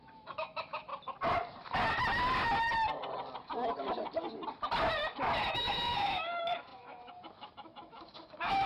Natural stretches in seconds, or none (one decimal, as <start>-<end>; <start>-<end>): 0.9-5.5